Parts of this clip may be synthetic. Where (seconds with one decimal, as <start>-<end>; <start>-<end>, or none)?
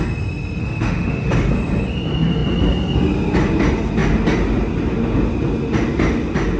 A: 0.6-1.5